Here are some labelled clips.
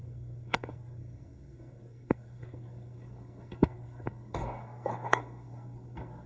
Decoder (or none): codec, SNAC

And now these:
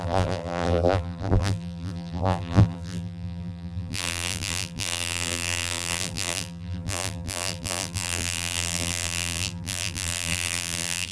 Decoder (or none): vocoder, BigVGAN v2